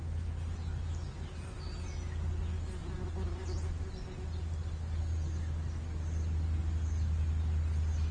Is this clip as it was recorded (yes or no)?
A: yes